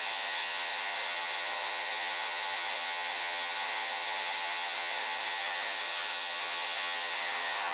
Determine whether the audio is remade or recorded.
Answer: remade